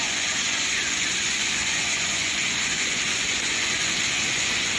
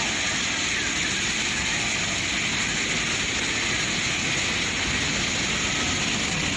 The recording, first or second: second